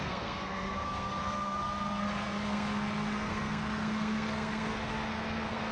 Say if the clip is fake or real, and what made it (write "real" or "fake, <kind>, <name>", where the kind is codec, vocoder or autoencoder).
fake, codec, SNAC